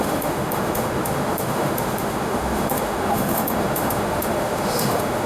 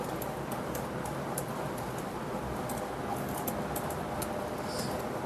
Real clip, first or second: second